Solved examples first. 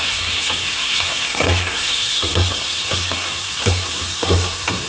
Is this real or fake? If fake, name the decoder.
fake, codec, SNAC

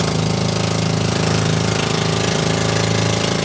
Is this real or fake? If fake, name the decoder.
real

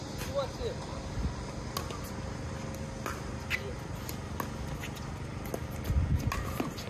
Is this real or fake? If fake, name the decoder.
real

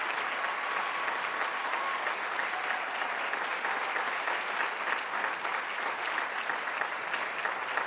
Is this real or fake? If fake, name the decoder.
real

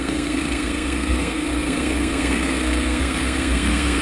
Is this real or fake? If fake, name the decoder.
fake, codec, SNAC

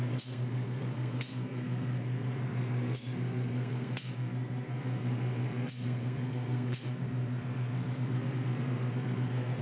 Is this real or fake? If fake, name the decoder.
fake, codec, SNAC